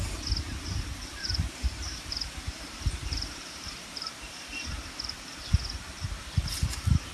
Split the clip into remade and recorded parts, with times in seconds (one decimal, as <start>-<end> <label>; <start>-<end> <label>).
0.0-1.2 recorded; 1.2-5.5 remade; 5.5-7.1 recorded